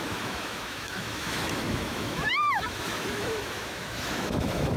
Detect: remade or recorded remade